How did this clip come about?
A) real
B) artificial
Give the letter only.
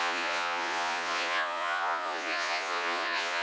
B